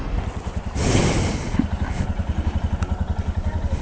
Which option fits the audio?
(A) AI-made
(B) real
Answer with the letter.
B